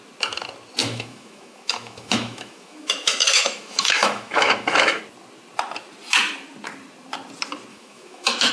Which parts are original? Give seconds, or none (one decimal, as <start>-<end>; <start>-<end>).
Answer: 0.0-0.8; 5.0-7.7